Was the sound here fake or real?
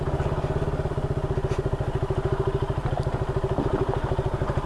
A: real